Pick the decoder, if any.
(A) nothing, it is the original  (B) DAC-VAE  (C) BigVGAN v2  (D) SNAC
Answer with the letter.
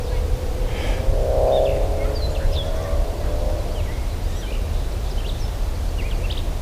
A